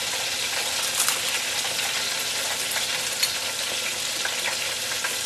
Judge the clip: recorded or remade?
recorded